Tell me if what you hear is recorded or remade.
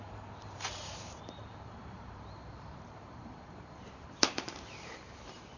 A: remade